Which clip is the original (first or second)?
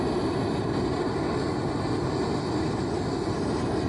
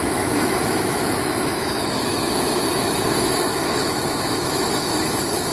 first